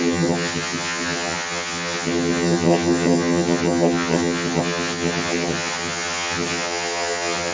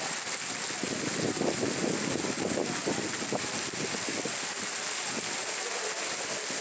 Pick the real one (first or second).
second